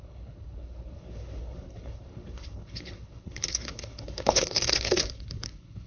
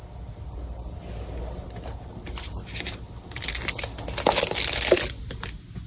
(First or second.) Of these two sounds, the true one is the second